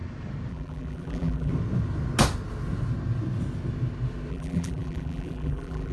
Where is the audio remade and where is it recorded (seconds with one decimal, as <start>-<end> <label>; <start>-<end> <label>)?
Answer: 0.0-0.5 recorded; 0.5-1.5 remade; 1.5-4.3 recorded; 4.3-5.9 remade